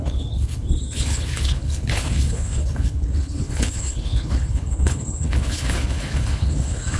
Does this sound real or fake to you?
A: fake